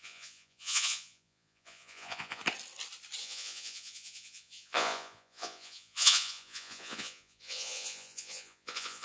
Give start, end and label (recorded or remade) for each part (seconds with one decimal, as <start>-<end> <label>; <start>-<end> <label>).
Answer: 0.0-2.4 remade; 2.4-3.2 recorded; 3.2-9.0 remade